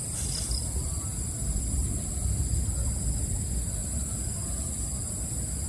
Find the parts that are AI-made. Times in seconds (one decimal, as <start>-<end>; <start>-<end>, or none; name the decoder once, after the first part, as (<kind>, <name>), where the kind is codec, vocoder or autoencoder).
0.0-2.6 (vocoder, BigVGAN v2)